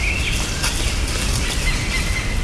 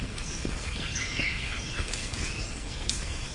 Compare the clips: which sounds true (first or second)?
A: first